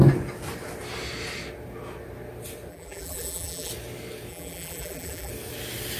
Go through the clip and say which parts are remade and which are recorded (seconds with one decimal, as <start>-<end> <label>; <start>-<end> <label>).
0.0-2.7 recorded; 2.7-3.7 remade; 3.7-4.3 recorded; 4.3-5.3 remade; 5.3-6.0 recorded